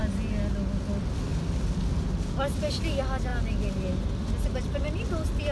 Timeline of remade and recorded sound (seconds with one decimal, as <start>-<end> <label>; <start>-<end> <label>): 0.0-5.5 recorded